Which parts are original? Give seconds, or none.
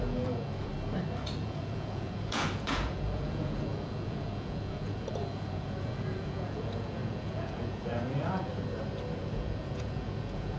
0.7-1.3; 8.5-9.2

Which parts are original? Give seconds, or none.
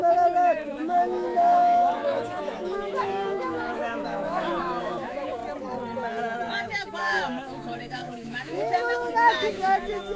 5.4-6.5